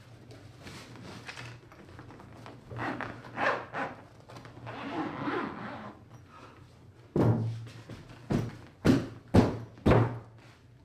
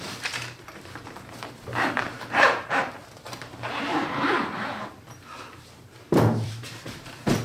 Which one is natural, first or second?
first